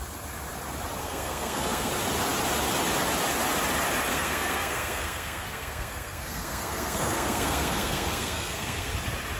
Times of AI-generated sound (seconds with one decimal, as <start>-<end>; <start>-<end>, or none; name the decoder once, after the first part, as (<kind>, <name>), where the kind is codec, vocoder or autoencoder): 1.0-1.9 (codec, SNAC); 4.1-8.9